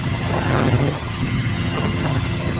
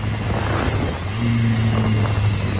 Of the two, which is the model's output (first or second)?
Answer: first